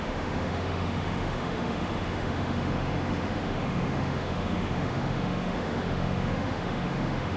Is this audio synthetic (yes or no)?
yes